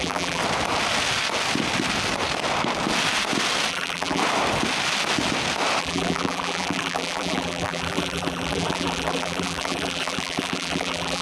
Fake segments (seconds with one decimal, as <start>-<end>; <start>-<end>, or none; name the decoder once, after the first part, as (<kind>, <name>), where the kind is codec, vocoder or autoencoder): 0.0-0.4 (vocoder, BigVGAN v2); 3.7-4.2; 5.8-11.2